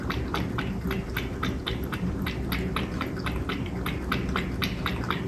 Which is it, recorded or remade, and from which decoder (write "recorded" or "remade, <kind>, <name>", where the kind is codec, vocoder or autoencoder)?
recorded